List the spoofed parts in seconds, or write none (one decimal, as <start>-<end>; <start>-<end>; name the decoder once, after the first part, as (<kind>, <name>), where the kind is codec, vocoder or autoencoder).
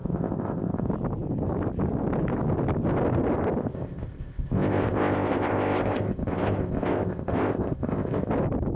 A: 0.0-0.9 (codec, ZipCodec); 3.6-8.3